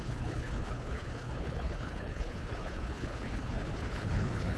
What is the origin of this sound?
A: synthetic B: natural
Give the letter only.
A